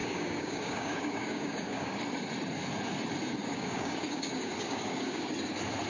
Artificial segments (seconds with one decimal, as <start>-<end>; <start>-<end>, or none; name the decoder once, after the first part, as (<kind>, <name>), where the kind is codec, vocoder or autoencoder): 0.0-2.0 (codec, DAC); 3.4-5.3